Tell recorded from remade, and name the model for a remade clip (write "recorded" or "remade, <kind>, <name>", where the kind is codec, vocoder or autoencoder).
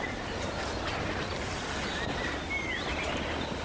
recorded